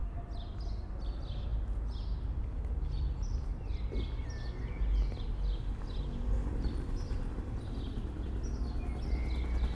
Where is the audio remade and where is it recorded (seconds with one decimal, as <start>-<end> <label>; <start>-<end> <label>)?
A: 0.0-9.7 recorded